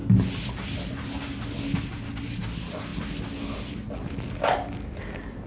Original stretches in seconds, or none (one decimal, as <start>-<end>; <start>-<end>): 0.0-5.5